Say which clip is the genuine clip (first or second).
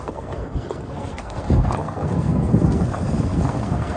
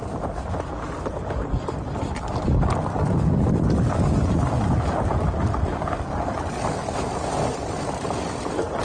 second